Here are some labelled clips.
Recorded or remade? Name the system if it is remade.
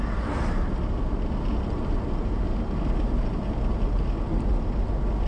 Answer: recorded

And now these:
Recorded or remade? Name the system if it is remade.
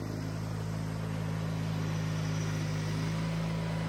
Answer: recorded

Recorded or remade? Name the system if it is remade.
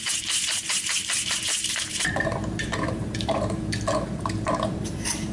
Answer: remade, vocoder, BigVGAN v2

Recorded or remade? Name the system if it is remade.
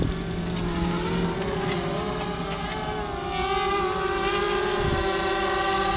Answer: recorded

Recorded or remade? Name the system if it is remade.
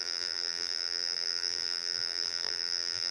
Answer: remade, vocoder, BigVGAN v2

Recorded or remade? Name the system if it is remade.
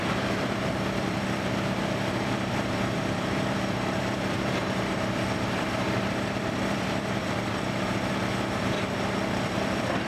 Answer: remade, vocoder, BigVGAN v2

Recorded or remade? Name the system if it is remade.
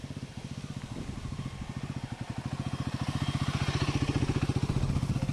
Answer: recorded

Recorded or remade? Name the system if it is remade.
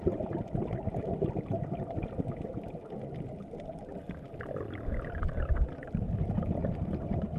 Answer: recorded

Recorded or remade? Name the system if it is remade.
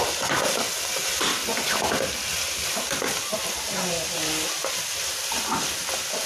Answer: recorded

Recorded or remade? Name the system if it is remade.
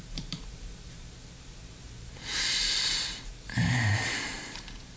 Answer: remade, vocoder, BigVGAN v2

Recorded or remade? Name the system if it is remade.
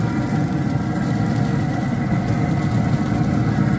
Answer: recorded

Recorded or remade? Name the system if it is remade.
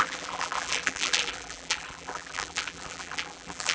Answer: remade, vocoder, BigVGAN v2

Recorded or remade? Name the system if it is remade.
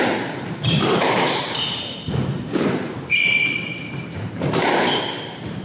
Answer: remade, vocoder, BigVGAN v2